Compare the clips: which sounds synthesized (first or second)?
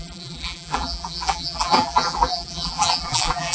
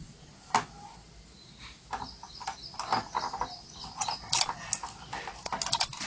first